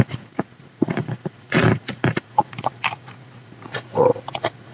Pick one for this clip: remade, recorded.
remade